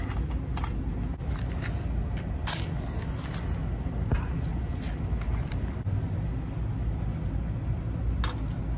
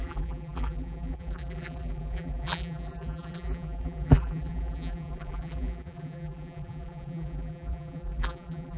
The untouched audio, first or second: first